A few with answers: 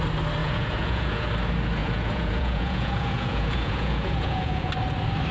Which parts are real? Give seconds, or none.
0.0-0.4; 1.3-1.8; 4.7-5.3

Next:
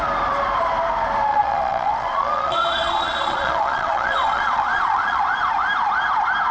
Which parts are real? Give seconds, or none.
0.0-1.3; 5.2-6.5

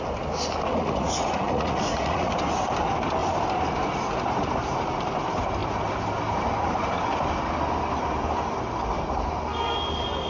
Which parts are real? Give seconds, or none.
0.0-0.7; 2.3-10.3